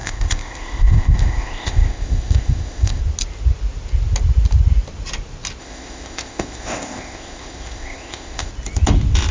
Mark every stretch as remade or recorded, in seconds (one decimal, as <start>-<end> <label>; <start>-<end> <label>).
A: 0.0-3.0 remade; 3.0-5.6 recorded; 5.6-8.5 remade; 8.5-9.3 recorded